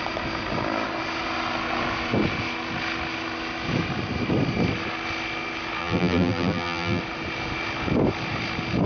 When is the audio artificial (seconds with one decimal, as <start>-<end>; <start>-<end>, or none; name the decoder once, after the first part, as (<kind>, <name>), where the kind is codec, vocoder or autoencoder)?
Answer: 5.8-7.0 (vocoder, BigVGAN v2)

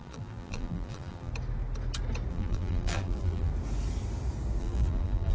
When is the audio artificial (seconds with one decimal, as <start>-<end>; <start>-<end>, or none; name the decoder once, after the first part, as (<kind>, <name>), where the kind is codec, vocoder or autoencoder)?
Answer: 0.0-1.3 (vocoder, BigVGAN v2); 2.3-3.5; 4.6-5.3

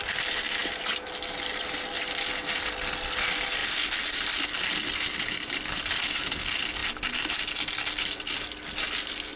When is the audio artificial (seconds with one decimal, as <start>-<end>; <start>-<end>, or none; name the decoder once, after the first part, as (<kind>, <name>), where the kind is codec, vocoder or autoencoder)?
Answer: none

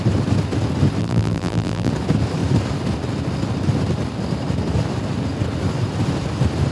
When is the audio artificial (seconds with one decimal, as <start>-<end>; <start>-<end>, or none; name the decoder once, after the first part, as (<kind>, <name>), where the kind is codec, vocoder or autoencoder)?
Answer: 1.0-1.9 (vocoder, BigVGAN v2)

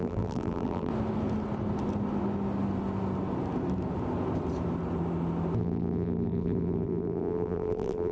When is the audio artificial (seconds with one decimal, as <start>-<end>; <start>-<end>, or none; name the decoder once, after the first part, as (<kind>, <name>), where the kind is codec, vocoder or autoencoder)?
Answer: 0.0-0.9 (vocoder, BigVGAN v2); 5.6-8.1